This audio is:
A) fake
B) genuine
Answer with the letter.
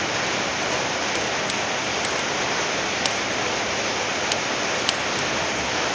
B